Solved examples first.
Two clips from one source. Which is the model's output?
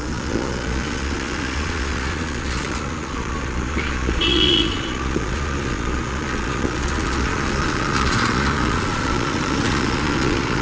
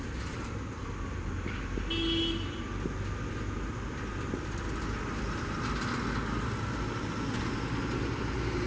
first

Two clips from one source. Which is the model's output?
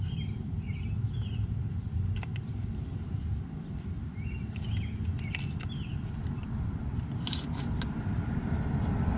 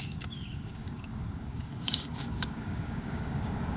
second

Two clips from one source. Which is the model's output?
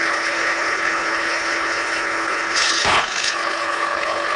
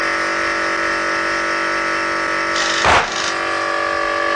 first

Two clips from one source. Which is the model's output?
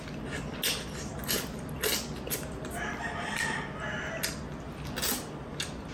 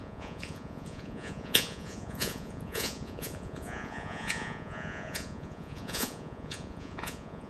second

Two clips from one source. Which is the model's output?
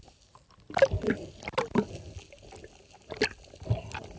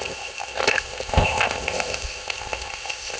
second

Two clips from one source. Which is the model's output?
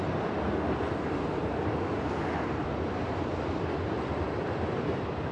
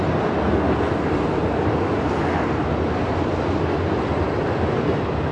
first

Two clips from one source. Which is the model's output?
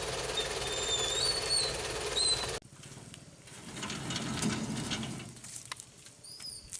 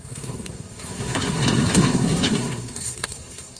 second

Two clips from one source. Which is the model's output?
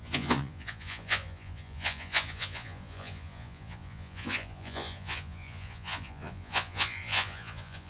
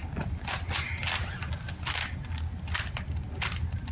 first